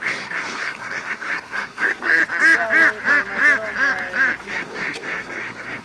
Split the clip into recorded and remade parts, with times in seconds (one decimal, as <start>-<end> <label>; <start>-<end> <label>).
0.0-2.2 remade; 2.2-4.4 recorded; 4.4-5.8 remade

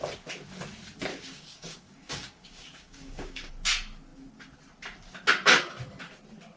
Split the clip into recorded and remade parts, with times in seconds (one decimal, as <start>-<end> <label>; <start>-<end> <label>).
0.0-1.1 recorded; 1.1-3.5 remade; 3.5-6.6 recorded

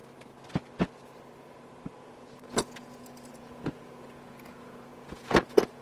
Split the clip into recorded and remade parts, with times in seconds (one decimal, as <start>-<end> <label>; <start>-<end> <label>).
0.0-2.0 recorded; 2.0-5.8 remade

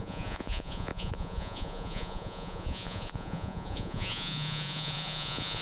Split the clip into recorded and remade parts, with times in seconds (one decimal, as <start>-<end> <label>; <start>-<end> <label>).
0.0-5.6 remade